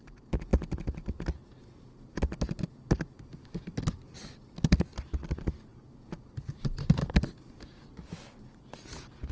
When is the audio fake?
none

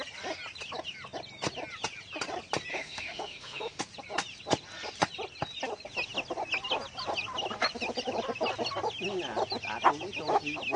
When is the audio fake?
2.7-3.8